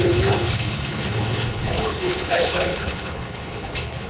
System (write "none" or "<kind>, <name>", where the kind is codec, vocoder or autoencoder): codec, HILCodec